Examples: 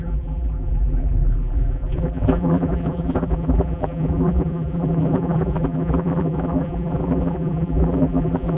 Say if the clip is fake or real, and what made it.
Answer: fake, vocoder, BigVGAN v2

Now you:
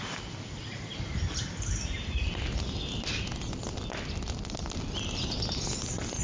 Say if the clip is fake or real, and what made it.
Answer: real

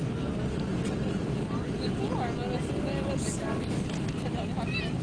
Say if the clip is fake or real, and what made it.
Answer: real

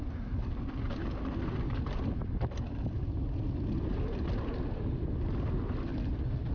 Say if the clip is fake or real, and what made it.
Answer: real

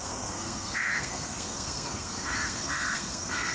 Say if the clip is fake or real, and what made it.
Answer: fake, codec, SNAC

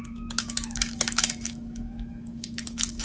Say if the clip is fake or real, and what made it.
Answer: fake, autoencoder, DAC-VAE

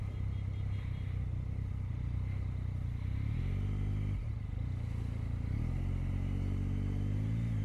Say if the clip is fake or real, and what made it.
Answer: real